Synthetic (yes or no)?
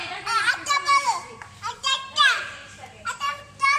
yes